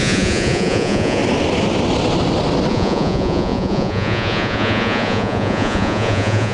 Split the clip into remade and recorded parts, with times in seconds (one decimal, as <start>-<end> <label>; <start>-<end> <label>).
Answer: 0.0-1.2 remade; 1.2-2.7 recorded; 2.7-6.5 remade